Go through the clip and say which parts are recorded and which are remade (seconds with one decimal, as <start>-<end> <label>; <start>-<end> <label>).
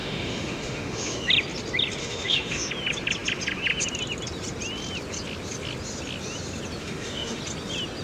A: 0.0-1.3 remade; 1.3-2.0 recorded; 2.0-2.7 remade; 2.7-6.8 recorded; 6.8-7.4 remade; 7.4-8.0 recorded